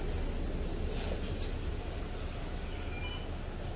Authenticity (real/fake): real